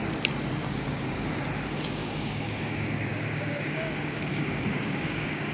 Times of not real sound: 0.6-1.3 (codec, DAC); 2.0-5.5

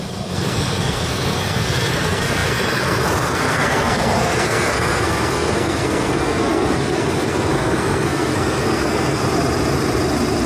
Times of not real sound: 0.0-9.2 (codec, SNAC)

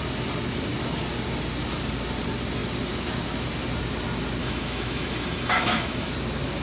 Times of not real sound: 4.4-6.1 (autoencoder, DAC-VAE)

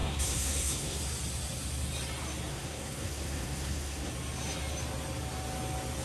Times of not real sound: 0.0-1.0 (codec, SNAC); 2.5-4.1